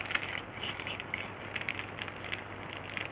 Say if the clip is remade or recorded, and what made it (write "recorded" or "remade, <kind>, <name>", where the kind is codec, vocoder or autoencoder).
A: recorded